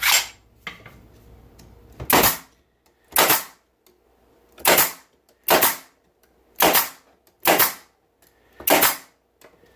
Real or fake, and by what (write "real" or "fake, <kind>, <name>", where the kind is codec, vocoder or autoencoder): real